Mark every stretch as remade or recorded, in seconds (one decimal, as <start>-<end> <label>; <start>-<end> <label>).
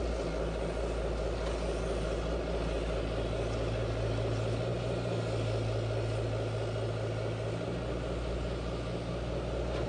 0.0-9.9 recorded